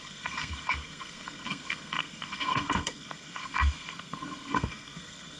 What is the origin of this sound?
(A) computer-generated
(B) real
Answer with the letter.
A